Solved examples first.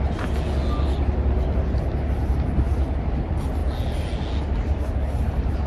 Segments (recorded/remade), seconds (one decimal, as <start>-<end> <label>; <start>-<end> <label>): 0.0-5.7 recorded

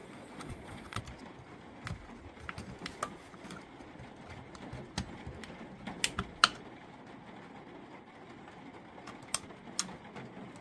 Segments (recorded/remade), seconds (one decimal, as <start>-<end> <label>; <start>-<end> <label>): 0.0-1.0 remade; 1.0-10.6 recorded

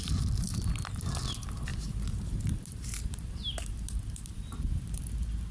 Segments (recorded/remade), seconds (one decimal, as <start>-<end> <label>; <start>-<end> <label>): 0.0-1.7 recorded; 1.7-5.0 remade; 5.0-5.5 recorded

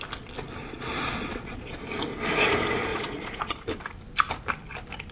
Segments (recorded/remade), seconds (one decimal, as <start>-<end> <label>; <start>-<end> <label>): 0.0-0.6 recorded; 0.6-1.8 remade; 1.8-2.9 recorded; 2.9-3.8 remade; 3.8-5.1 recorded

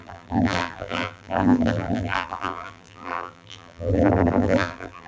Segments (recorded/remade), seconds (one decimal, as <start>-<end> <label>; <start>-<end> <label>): 0.0-5.1 remade

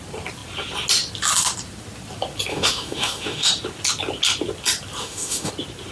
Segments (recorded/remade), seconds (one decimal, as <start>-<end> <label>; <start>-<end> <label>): 0.0-2.5 recorded; 2.5-3.5 remade; 3.5-5.0 recorded; 5.0-5.5 remade; 5.5-5.9 recorded

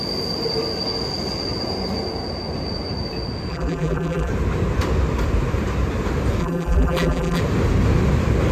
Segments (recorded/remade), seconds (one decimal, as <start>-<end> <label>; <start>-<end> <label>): 0.0-3.5 recorded; 3.5-4.3 remade; 4.3-6.4 recorded; 6.4-7.4 remade; 7.4-8.5 recorded